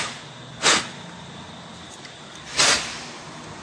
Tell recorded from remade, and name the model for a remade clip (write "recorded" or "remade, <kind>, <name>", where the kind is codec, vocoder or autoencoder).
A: recorded